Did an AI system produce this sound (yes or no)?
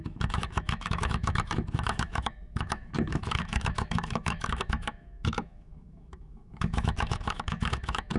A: yes